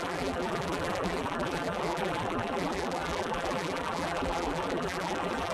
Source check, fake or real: fake